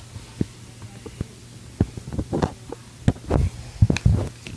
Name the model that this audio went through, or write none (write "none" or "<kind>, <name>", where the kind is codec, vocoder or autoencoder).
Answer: none